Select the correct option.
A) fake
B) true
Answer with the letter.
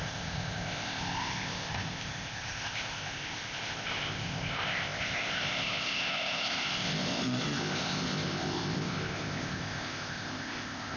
A